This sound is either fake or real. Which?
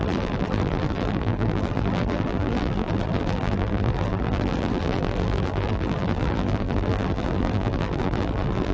fake